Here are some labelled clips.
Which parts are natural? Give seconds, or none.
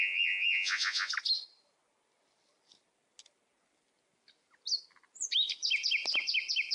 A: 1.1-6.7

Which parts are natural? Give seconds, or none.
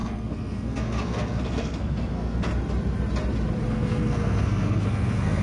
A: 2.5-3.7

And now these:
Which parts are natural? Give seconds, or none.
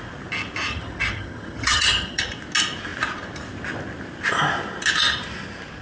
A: 0.0-0.7; 2.2-5.8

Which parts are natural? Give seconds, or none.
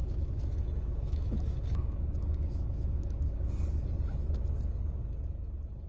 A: 3.5-5.9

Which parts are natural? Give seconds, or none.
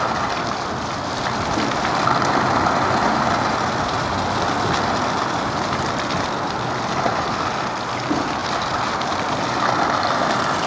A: 0.0-10.7